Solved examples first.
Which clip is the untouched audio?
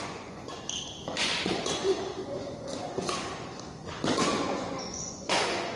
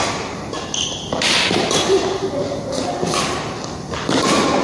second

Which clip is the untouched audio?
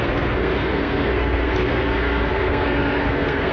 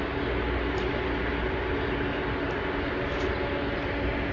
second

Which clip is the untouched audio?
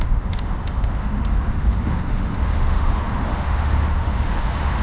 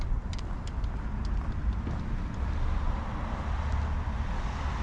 second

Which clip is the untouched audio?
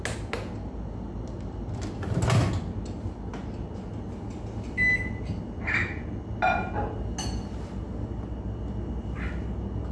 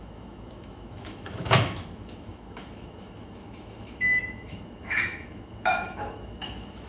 first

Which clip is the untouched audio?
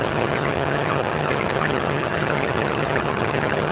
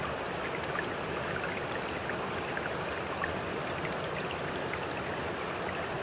second